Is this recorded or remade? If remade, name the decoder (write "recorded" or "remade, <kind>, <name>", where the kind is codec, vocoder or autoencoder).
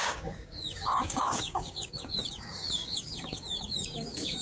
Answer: remade, codec, DAC